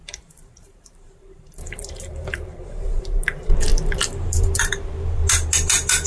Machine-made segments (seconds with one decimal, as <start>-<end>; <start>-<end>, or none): 0.0-5.2